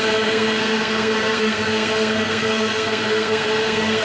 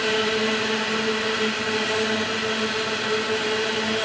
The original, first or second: second